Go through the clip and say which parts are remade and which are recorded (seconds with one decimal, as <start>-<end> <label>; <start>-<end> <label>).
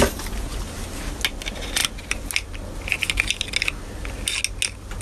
0.0-5.0 recorded